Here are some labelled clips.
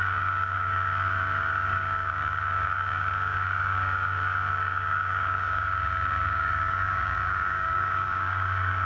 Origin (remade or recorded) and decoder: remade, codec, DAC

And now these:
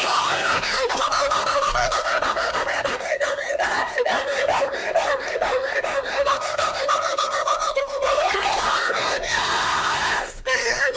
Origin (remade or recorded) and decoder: remade, codec, SNAC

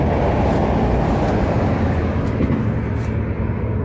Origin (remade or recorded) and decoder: recorded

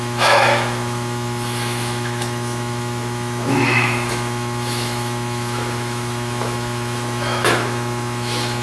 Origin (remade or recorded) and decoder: remade, autoencoder, DAC-VAE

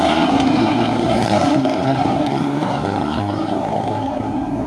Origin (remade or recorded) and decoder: remade, codec, SNAC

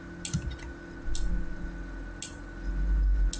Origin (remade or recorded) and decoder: recorded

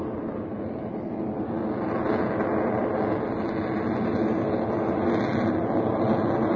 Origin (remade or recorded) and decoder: recorded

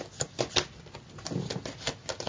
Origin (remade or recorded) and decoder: recorded